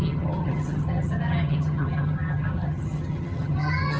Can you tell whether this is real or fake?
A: fake